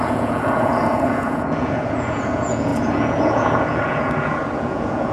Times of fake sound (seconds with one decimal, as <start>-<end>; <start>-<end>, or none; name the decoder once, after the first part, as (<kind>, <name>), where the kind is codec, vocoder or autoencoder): 0.0-5.1 (vocoder, Vocos)